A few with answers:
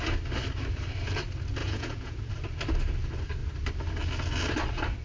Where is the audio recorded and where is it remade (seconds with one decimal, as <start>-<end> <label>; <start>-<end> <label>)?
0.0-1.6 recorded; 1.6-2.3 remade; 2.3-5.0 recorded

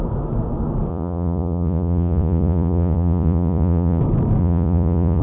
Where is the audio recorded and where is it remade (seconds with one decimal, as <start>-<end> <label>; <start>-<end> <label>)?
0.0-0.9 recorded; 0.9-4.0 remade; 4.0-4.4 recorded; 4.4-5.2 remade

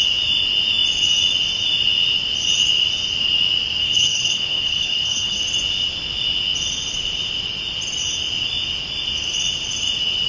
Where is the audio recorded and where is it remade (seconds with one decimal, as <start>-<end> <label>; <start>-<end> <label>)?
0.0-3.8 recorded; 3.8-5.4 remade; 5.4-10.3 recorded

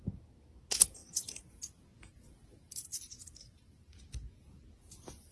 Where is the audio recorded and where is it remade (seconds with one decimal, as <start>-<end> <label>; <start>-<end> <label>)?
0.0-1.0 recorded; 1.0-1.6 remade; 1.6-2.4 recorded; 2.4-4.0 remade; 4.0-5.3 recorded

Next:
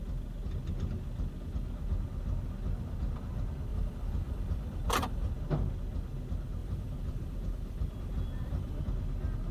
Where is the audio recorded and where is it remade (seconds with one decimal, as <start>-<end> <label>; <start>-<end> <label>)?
0.0-3.7 recorded; 3.7-5.3 remade; 5.3-6.6 recorded; 6.6-8.8 remade; 8.8-9.5 recorded

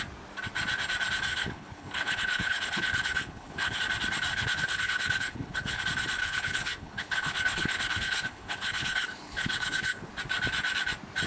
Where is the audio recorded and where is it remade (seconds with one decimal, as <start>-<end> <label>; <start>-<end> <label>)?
0.0-1.3 recorded; 1.3-3.8 remade; 3.8-4.3 recorded; 4.3-5.8 remade; 5.8-6.2 recorded; 6.2-10.1 remade; 10.1-11.3 recorded